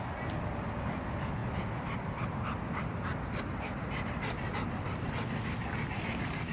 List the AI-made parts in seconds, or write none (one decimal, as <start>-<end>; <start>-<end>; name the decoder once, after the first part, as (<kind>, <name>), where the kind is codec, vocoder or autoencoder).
none